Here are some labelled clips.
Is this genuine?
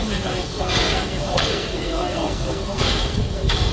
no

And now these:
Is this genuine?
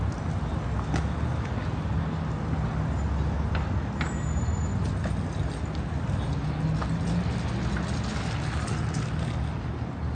yes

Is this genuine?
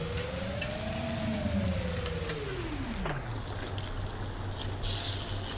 yes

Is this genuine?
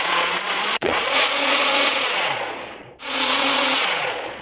no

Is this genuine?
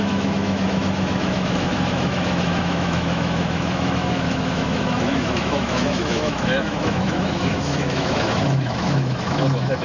no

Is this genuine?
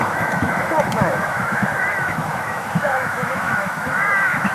no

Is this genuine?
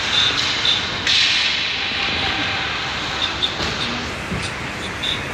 yes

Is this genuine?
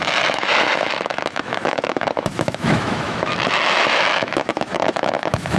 no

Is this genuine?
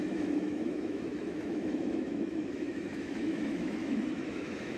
no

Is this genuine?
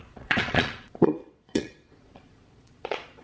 no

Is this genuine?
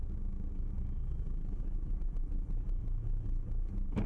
no